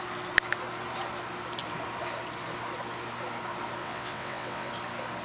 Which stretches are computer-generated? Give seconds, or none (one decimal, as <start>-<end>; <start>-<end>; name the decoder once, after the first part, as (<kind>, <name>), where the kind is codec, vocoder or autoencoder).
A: 3.8-4.7 (vocoder, WaveNeXt)